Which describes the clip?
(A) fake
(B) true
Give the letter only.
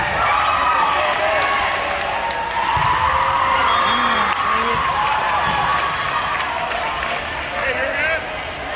B